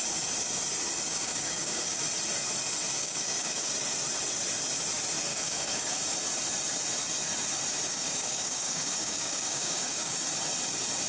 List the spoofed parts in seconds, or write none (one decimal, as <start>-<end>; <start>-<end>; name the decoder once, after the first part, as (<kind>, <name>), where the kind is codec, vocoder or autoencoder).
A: 1.1-2.0 (codec, DAC); 3.0-3.7; 5.3-6.0; 7.9-10.2

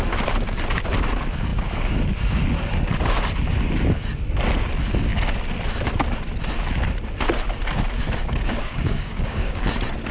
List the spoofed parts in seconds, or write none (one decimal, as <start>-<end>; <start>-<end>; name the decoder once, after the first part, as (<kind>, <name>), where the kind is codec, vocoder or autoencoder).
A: 8.2-9.7 (codec, DAC)

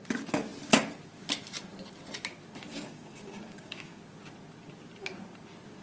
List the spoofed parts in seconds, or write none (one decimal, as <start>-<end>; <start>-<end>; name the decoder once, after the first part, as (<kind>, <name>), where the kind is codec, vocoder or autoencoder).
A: 2.7-4.0 (codec, DAC)

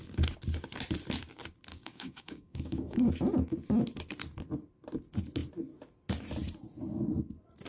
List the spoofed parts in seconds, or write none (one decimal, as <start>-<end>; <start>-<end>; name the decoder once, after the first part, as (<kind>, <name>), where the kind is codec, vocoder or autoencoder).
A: 1.7-3.1 (codec, DAC)